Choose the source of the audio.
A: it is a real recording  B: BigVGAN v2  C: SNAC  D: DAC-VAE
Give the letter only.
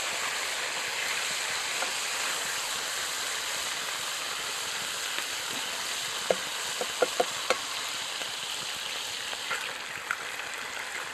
A